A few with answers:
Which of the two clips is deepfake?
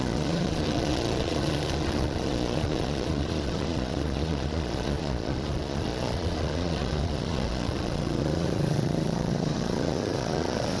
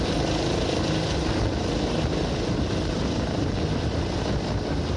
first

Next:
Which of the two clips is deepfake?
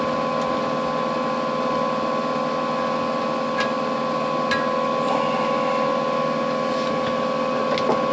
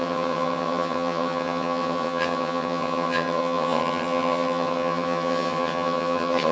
second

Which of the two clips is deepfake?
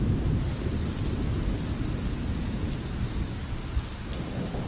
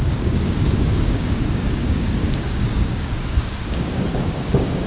second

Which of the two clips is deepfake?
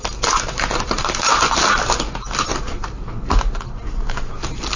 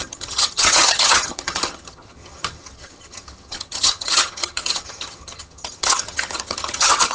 second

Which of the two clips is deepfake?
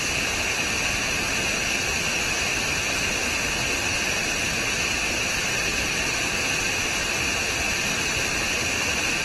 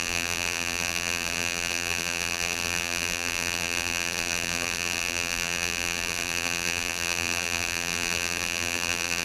second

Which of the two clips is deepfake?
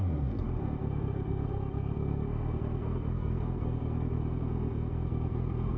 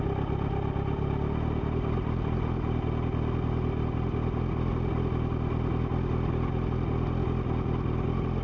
first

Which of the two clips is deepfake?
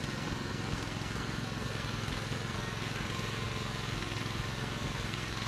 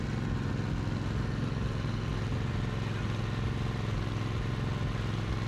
first